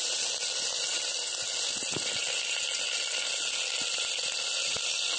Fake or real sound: real